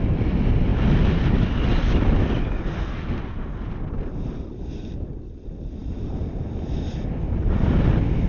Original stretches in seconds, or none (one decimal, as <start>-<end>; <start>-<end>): 0.0-8.3